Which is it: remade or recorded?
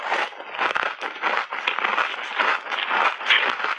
recorded